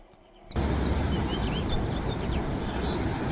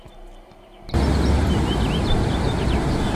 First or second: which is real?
second